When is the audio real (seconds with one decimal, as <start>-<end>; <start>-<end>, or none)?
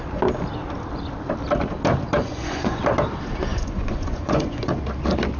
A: 0.0-2.2; 2.8-3.5; 4.7-5.4